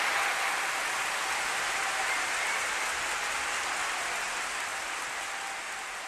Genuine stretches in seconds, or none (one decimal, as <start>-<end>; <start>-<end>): 0.0-6.1